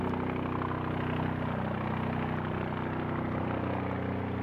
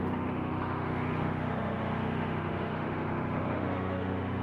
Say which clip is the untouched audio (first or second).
first